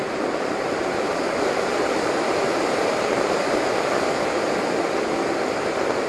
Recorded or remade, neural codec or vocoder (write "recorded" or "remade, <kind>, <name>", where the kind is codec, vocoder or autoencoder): remade, vocoder, BigVGAN v2